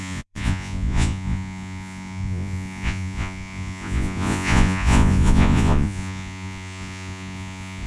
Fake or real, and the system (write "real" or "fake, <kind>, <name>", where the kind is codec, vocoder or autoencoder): fake, vocoder, Vocos